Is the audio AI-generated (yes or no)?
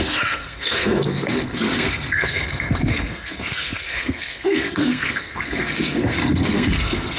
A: yes